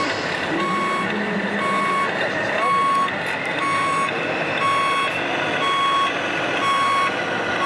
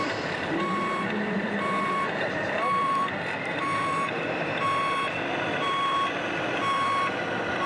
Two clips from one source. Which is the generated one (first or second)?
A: second